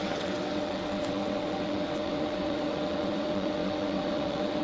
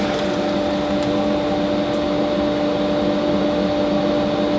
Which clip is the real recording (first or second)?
second